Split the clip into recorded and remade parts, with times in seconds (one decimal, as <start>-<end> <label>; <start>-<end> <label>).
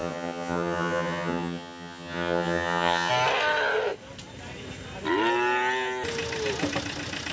0.0-3.1 remade; 3.1-7.3 recorded